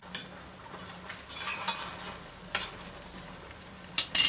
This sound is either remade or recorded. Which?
recorded